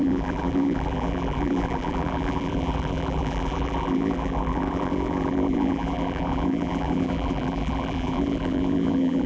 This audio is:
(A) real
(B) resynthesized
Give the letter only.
B